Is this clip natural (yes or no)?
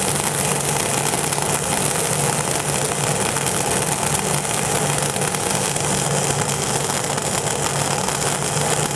yes